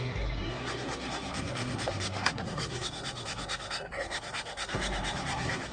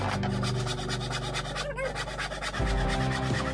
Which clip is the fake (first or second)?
first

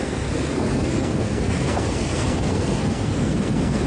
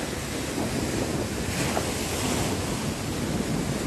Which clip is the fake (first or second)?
first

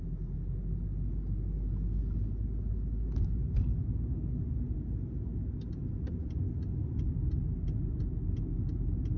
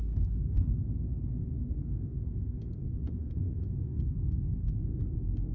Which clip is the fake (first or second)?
second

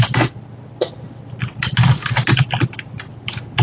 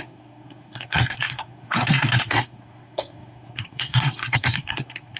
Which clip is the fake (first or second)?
second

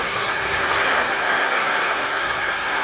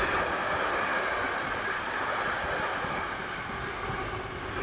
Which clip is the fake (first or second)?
first